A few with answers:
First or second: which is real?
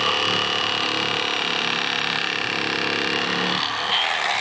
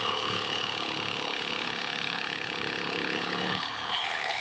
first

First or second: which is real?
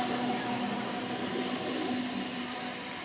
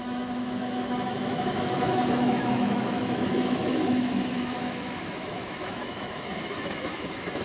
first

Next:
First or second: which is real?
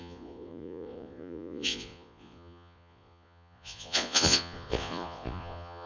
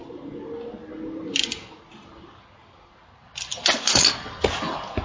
second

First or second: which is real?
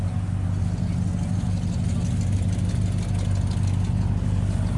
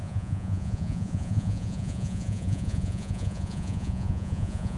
first